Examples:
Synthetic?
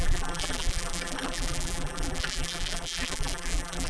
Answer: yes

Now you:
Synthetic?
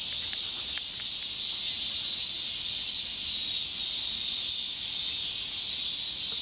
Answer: no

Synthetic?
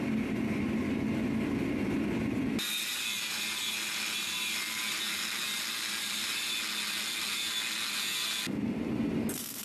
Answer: no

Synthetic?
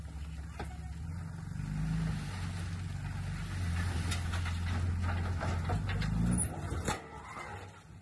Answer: no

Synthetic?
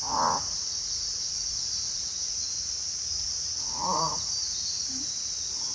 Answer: yes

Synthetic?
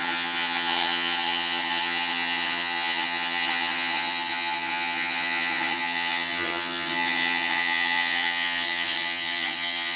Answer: yes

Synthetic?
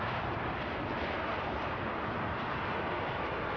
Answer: no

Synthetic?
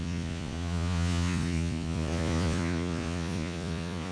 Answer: yes